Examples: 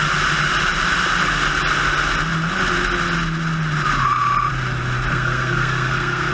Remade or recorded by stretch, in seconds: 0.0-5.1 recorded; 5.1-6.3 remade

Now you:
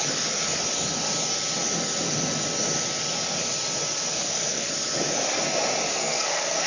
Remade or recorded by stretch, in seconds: 0.0-4.1 recorded; 4.1-4.7 remade; 4.7-5.9 recorded; 5.9-6.7 remade

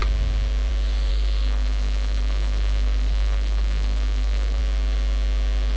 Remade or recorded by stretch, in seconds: 0.0-1.1 recorded; 1.1-4.6 remade; 4.6-5.8 recorded

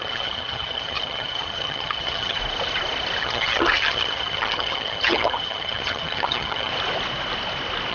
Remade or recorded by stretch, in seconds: 0.0-2.4 remade; 2.4-3.2 recorded; 3.2-6.7 remade; 6.7-7.9 recorded